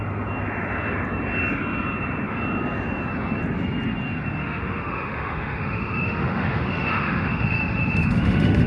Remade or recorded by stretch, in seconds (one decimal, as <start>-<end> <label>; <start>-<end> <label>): 0.0-4.4 recorded; 4.4-8.7 remade